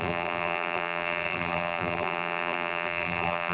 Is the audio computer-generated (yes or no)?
yes